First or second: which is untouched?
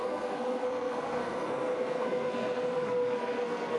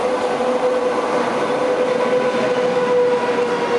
second